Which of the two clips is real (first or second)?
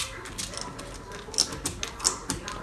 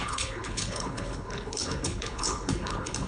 first